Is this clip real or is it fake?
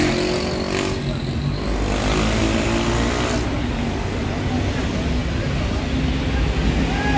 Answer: real